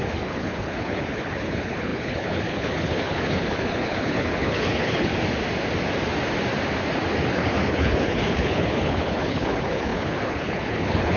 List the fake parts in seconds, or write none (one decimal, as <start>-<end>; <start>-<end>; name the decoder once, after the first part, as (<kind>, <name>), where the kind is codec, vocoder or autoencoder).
0.0-5.1 (codec, HILCodec); 7.3-11.2